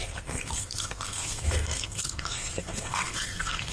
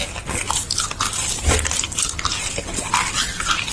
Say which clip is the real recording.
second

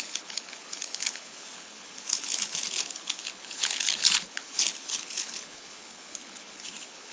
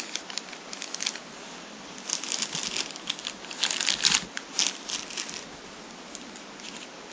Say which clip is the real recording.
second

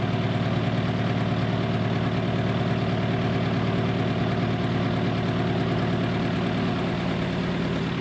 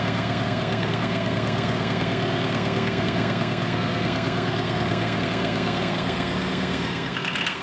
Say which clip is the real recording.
first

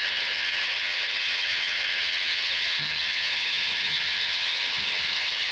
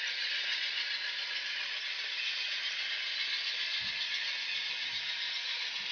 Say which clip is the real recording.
second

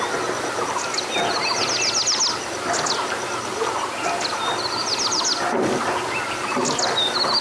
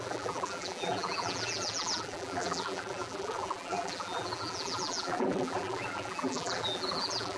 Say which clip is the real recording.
first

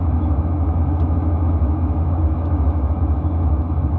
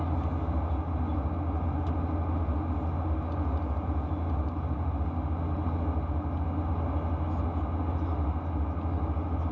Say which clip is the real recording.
second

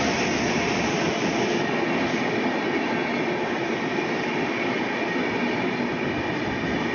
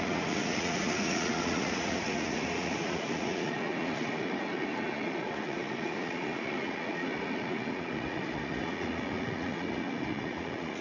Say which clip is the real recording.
first